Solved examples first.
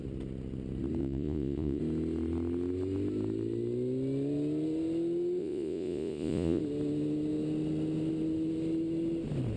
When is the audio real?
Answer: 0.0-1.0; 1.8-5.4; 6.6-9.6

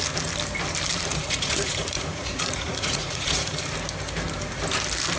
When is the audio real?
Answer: 0.0-1.1; 3.6-5.2